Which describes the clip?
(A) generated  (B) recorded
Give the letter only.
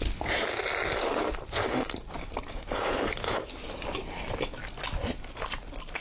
B